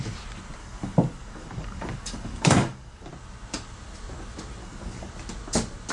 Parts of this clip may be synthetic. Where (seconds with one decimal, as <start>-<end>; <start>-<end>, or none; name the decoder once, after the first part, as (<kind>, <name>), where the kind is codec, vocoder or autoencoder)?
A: 0.6-3.1 (codec, DAC); 4.6-5.1